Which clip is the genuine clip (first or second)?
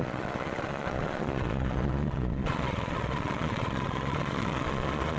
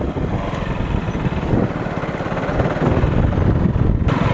second